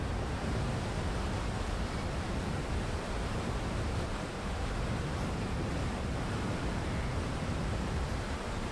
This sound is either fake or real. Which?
fake